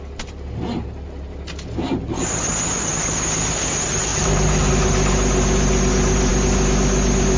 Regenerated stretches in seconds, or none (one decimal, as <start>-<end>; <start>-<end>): 4.1-4.7